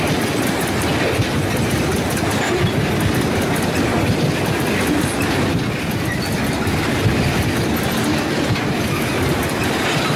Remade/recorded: recorded